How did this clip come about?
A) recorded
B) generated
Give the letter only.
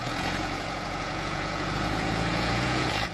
B